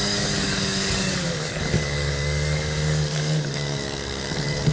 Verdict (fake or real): fake